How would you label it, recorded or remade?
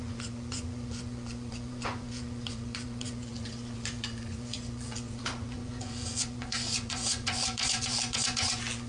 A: remade